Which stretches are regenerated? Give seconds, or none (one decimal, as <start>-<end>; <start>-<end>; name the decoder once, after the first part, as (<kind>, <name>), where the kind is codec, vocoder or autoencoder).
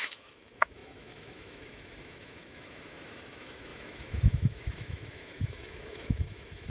0.0-6.7 (autoencoder, DAC-VAE)